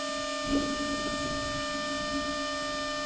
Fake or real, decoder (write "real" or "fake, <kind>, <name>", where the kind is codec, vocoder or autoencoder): real